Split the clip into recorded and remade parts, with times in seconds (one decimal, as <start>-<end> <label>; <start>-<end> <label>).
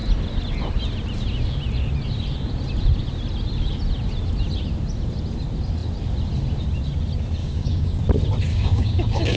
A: 0.0-7.4 recorded; 7.4-8.0 remade; 8.0-8.5 recorded; 8.5-9.4 remade